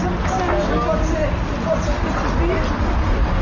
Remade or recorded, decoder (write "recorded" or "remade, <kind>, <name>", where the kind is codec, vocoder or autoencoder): recorded